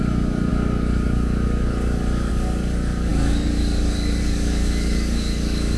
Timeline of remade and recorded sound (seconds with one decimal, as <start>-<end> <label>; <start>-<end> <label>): 0.0-5.8 remade